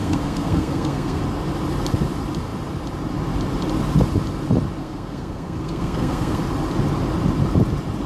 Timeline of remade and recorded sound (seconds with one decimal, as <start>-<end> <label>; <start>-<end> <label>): 0.0-1.2 remade; 1.2-4.8 recorded; 4.8-6.4 remade; 6.4-8.1 recorded